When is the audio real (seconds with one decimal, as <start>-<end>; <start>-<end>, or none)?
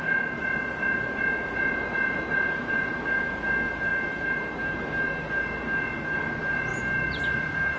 0.0-3.9; 4.8-6.7; 7.2-7.8